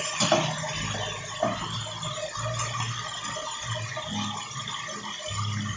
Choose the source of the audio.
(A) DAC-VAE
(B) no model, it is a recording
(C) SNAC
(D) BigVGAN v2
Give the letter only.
B